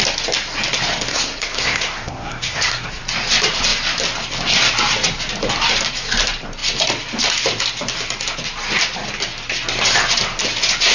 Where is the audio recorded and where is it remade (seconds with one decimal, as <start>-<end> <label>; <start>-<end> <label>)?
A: 0.0-1.1 recorded; 1.1-3.0 remade; 3.0-10.9 recorded

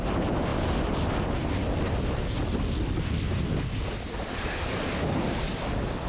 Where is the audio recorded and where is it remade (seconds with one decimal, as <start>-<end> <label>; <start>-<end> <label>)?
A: 0.0-6.1 recorded